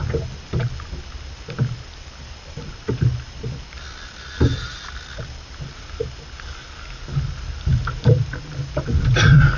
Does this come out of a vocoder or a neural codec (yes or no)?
no